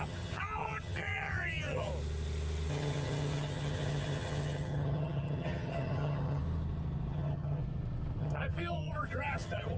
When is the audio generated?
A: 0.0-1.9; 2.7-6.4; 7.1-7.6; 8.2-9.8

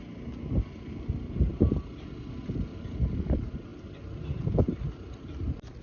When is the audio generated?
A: none

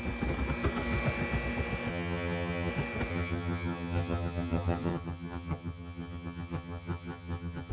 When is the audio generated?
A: 1.9-2.7; 3.1-7.7

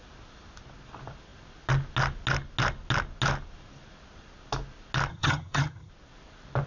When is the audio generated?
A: 5.1-5.9

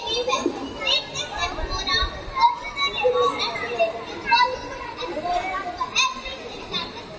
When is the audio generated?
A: none

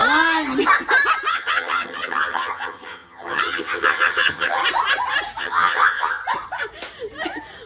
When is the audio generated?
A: 1.3-4.6; 5.4-6.2

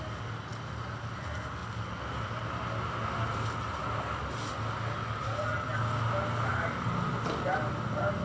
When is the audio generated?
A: none

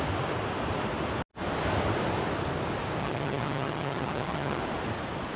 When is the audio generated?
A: 3.0-4.6